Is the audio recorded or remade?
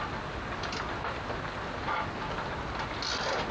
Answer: recorded